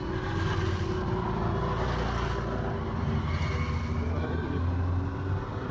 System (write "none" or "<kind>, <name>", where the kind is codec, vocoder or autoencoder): none